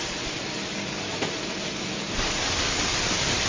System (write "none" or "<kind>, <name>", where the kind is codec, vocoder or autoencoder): none